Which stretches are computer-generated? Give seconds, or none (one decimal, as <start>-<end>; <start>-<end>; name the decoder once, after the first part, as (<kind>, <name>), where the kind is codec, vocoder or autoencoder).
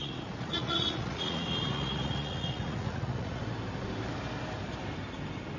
0.0-3.4 (vocoder, Vocos)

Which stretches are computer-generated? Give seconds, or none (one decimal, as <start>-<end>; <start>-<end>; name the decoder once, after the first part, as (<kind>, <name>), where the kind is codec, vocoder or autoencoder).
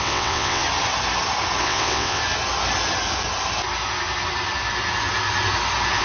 0.0-0.6 (vocoder, WaveNeXt); 1.6-2.2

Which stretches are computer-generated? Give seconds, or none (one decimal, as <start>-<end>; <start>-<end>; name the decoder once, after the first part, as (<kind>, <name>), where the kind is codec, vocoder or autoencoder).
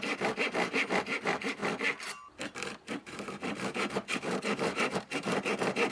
0.0-1.6 (vocoder, BigVGAN v2); 2.9-5.9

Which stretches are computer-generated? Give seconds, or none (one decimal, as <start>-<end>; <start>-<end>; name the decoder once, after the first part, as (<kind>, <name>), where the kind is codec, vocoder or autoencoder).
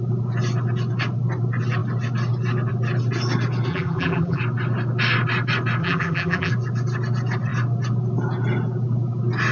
3.7-4.4 (vocoder, BigVGAN v2); 5.8-6.5